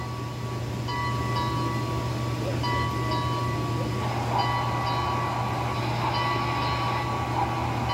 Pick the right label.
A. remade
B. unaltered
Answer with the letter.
B